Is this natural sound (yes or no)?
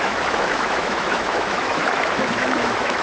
no